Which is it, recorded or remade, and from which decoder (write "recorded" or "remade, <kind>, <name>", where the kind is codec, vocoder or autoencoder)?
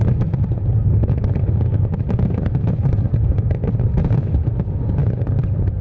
recorded